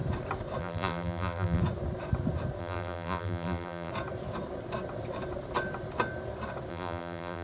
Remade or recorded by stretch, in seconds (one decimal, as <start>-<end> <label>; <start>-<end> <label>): 0.0-0.6 recorded; 0.6-1.6 remade; 1.6-2.6 recorded; 2.6-3.9 remade; 3.9-6.7 recorded; 6.7-7.4 remade